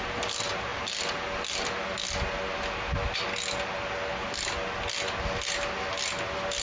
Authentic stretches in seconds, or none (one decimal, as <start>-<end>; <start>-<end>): 0.0-6.6